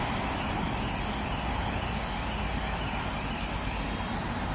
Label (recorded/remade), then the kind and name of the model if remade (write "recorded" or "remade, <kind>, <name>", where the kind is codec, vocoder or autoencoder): recorded